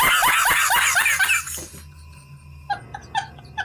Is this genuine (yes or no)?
yes